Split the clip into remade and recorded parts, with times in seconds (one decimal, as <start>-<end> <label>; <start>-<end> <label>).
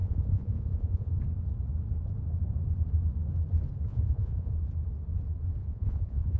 0.0-1.2 remade; 1.2-3.9 recorded; 3.9-4.5 remade; 4.5-5.6 recorded; 5.6-6.4 remade